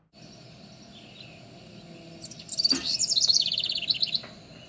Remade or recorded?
recorded